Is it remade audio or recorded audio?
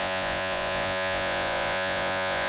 remade